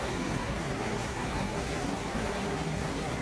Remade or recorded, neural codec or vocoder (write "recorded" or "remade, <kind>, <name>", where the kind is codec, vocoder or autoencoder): remade, codec, SNAC